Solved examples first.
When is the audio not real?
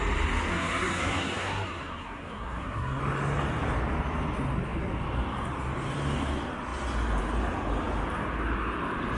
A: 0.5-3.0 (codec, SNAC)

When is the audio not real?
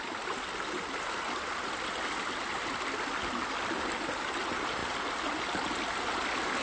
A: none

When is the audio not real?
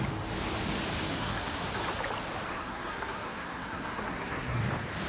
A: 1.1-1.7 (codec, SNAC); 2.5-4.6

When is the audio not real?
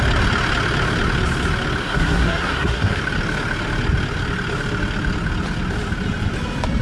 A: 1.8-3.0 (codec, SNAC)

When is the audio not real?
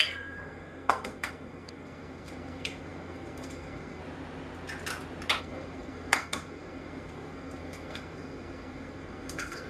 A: 0.0-4.0 (codec, SNAC); 5.4-9.7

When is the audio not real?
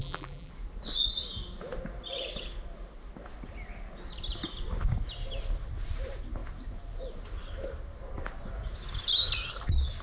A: 0.0-0.5 (vocoder, BigVGAN v2)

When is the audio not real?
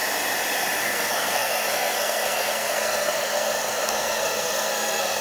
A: 0.8-5.2 (codec, SNAC)